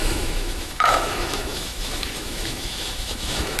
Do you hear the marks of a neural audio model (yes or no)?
yes